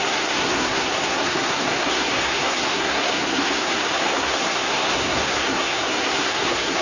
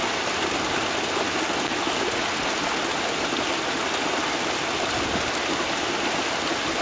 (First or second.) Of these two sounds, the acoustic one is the second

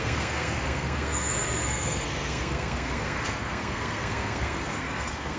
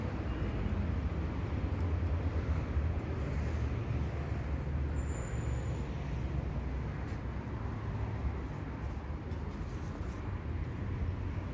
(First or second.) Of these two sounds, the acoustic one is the second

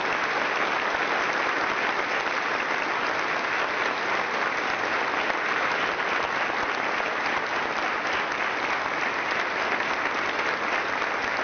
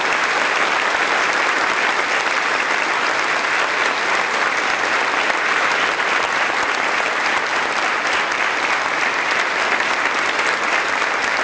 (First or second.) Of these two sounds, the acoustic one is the first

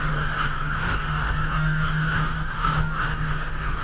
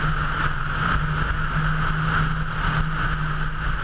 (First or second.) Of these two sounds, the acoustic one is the second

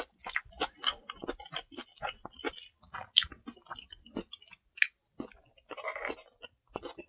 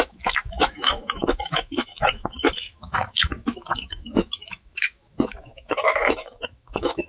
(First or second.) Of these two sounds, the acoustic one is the first